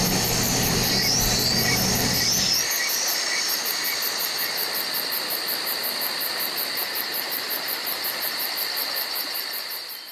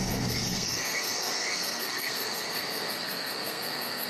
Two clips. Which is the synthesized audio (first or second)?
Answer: second